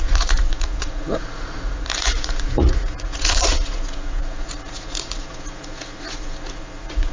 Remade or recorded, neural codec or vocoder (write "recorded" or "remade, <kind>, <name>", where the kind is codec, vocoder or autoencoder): remade, vocoder, Vocos